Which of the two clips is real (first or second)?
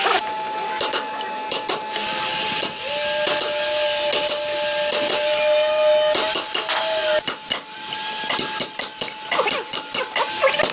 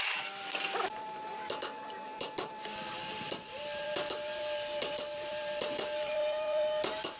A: first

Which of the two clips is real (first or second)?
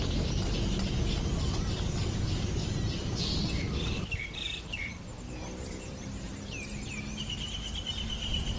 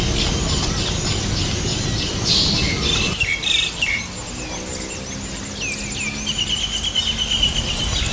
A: second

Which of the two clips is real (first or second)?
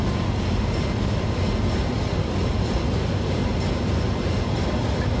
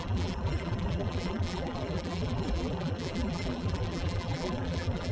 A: first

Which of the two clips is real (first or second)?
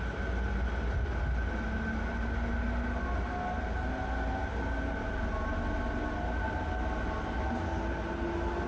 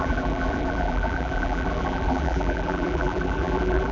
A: first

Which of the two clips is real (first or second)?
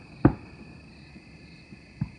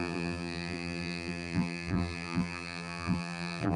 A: first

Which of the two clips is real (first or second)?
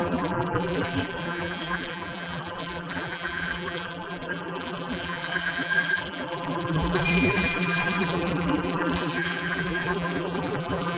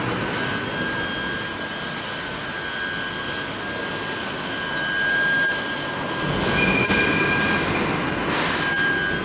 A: second